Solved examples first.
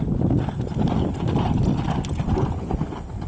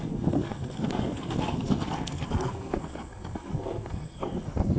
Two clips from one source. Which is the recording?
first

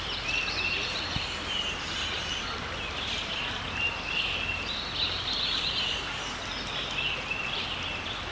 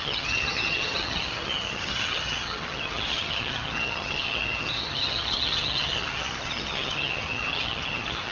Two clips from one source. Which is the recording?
first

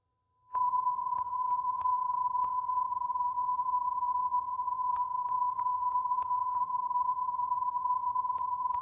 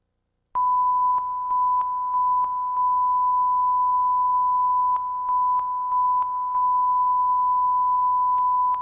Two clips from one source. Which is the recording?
second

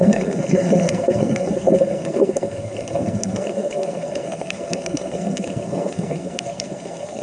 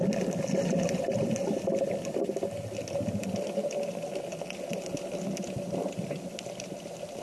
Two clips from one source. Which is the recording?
second